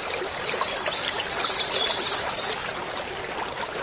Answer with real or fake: real